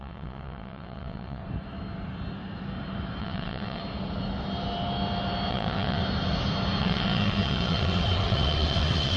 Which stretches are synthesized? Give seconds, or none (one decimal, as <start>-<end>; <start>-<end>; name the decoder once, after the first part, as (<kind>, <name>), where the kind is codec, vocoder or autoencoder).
0.0-1.4 (vocoder, WaveNeXt); 3.2-3.8; 5.5-6.0; 6.8-9.2